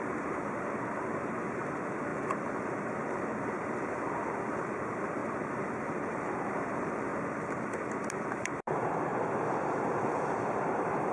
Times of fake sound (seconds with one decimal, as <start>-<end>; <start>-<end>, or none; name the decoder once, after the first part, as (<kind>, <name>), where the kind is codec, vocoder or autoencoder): 0.0-9.1 (vocoder, BigVGAN v2); 10.0-11.1